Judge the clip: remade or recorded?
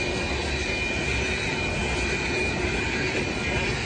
recorded